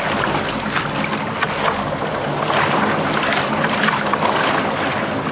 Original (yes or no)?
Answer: yes